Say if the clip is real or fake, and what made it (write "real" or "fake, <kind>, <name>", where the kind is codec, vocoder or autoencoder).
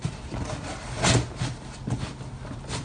real